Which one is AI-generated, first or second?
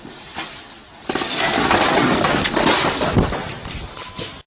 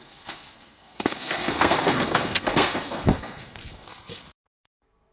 second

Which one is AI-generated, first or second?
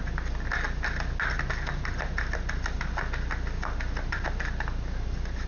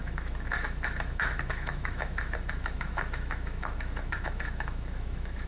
second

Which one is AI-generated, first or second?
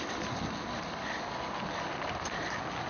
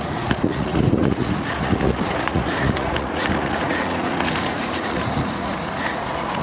second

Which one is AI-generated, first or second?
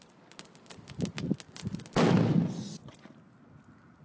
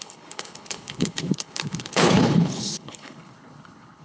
second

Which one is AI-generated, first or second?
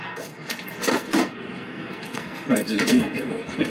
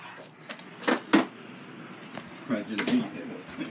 first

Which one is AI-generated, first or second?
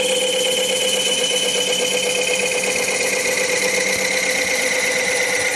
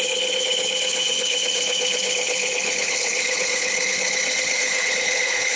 second